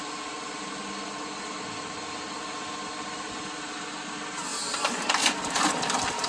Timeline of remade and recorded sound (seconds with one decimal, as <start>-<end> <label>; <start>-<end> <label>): 0.0-6.3 recorded